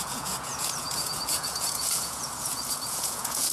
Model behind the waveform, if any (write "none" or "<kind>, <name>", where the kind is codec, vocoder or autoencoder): vocoder, Vocos